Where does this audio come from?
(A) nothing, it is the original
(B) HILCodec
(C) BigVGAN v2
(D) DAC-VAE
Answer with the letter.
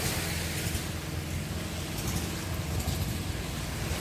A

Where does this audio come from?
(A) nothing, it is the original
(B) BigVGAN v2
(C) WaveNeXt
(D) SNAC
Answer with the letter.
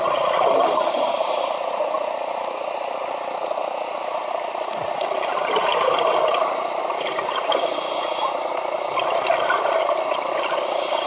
A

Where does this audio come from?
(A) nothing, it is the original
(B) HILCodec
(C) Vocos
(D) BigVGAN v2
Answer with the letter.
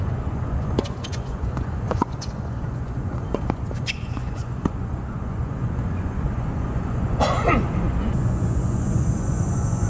C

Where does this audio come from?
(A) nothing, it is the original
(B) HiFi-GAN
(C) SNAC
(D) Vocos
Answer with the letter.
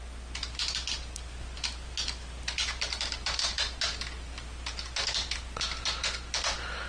A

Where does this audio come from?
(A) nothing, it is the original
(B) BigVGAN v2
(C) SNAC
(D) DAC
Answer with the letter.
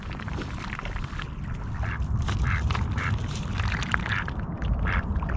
B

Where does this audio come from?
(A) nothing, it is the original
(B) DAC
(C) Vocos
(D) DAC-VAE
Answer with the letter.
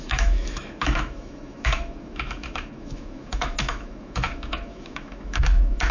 D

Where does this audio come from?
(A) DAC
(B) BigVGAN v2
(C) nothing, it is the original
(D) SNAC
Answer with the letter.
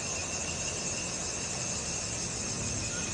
C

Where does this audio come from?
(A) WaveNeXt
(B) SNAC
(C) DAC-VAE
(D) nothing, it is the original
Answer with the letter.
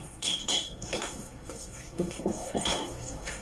B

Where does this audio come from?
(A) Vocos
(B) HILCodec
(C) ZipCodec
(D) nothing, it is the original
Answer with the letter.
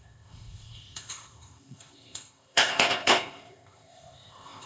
C